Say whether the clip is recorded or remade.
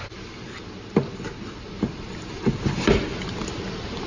recorded